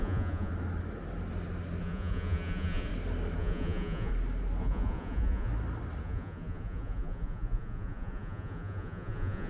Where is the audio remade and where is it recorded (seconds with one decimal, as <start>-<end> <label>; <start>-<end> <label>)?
0.0-0.5 remade; 0.5-1.8 recorded; 1.8-2.9 remade; 2.9-3.4 recorded; 3.4-4.1 remade; 4.1-4.6 recorded; 4.6-5.5 remade; 5.5-6.0 recorded; 6.0-9.5 remade